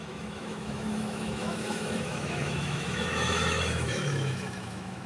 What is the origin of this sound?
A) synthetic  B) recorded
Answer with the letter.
A